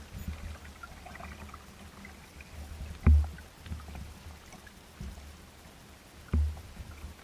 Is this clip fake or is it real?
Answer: real